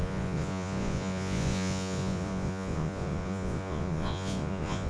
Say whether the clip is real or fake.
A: fake